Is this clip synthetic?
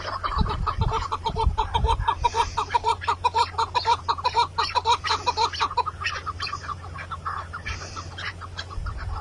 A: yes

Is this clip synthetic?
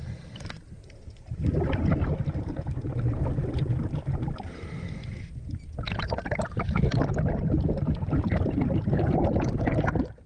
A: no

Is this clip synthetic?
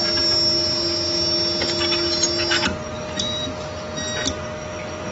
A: no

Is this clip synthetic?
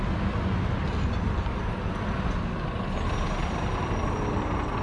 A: no